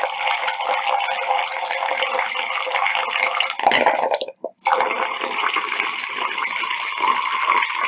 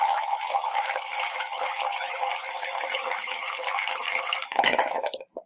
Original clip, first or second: first